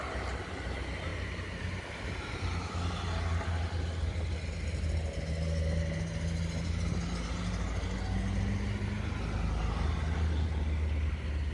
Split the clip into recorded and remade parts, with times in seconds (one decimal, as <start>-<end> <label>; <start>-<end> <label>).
0.0-1.1 recorded; 1.1-1.6 remade; 1.6-11.5 recorded